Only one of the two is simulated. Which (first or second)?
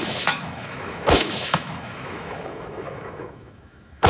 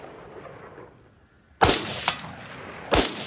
first